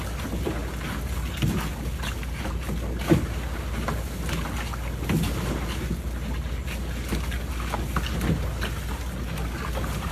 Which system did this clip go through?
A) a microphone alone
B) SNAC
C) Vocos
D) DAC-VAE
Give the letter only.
A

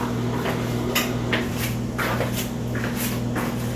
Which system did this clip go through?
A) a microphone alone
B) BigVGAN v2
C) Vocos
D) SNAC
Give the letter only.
A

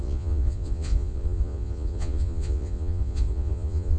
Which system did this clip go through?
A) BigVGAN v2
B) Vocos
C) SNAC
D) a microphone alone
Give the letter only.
B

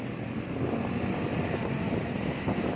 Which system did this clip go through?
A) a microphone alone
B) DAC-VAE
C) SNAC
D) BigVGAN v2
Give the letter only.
A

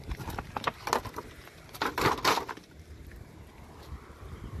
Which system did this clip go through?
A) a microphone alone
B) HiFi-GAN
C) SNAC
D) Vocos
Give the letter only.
A